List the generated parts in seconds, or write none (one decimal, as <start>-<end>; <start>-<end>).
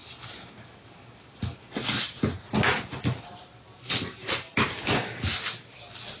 4.5-5.3